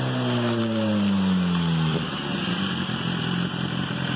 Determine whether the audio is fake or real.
real